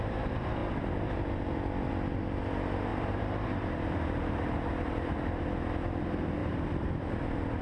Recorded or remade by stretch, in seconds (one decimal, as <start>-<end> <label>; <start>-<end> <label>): 0.0-2.9 recorded; 2.9-4.7 remade; 4.7-6.4 recorded; 6.4-7.1 remade; 7.1-7.6 recorded